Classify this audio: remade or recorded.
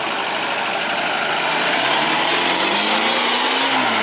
recorded